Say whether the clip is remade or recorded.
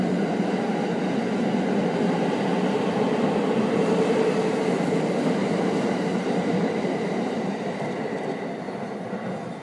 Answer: recorded